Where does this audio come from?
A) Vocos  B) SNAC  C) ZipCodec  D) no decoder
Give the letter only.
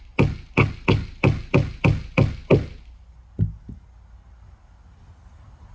D